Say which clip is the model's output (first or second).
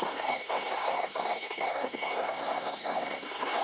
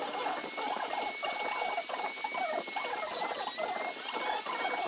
first